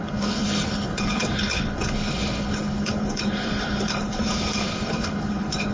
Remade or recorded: remade